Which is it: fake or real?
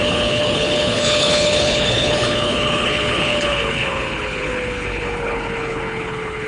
fake